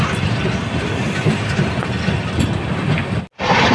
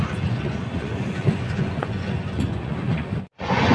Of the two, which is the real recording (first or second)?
first